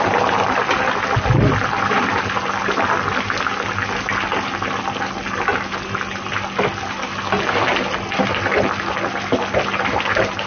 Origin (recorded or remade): recorded